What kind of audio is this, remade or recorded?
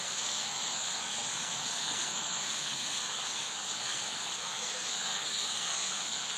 remade